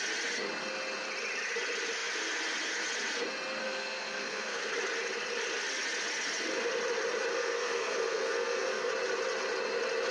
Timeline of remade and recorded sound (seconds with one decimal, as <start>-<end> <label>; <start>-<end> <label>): 0.0-3.6 recorded; 3.6-4.7 remade; 4.7-7.3 recorded; 7.3-8.9 remade; 8.9-10.1 recorded